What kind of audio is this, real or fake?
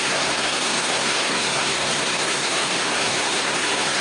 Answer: fake